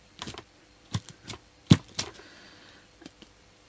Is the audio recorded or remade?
remade